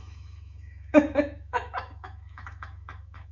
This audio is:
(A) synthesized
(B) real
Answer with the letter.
A